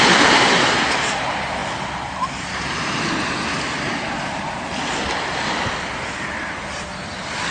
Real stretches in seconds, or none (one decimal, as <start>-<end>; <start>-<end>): 0.0-7.5